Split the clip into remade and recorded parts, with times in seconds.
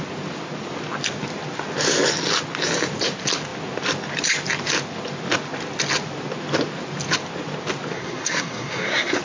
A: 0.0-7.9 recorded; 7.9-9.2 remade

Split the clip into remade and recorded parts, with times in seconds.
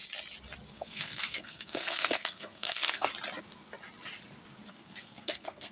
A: 0.0-0.7 recorded; 0.7-3.1 remade; 3.1-4.7 recorded; 4.7-5.7 remade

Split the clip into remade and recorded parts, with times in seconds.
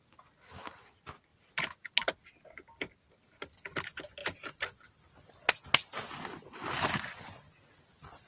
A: 0.0-8.3 recorded